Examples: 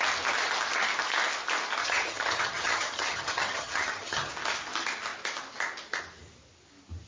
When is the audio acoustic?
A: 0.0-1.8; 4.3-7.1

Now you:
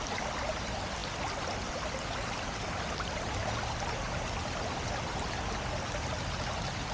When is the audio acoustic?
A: 0.0-6.9